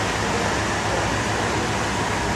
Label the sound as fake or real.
real